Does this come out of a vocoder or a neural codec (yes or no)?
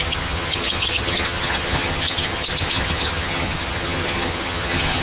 yes